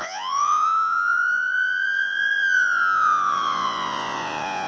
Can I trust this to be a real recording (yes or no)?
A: no